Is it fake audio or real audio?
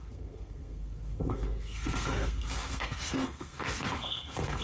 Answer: fake